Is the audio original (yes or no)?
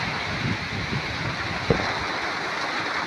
yes